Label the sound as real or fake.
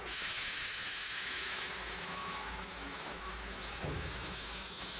fake